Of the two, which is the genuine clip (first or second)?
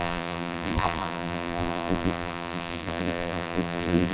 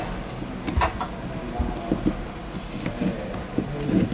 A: second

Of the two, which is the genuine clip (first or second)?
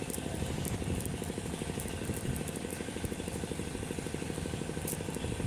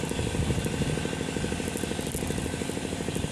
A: second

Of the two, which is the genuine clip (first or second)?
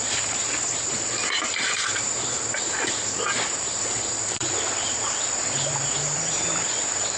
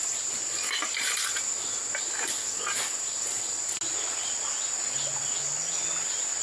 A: second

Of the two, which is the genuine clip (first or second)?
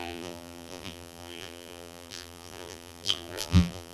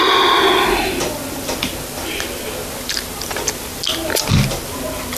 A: second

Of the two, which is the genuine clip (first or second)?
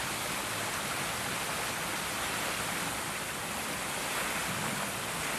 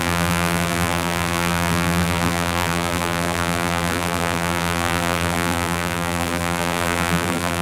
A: first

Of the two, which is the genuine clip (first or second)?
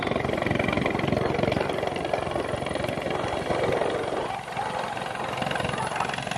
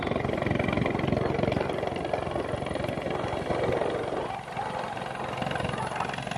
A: second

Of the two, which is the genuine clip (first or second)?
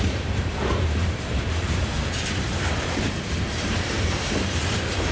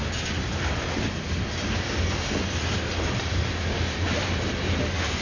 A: second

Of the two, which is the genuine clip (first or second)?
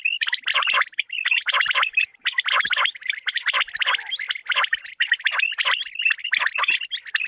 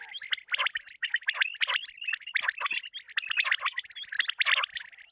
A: second